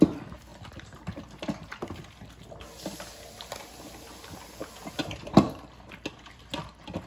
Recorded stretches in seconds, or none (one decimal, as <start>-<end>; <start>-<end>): 0.0-7.1